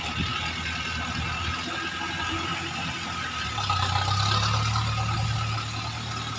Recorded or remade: recorded